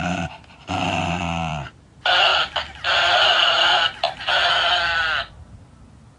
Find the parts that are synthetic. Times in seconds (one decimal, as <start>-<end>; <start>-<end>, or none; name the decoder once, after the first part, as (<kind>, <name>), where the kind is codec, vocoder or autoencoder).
0.0-6.2 (vocoder, BigVGAN v2)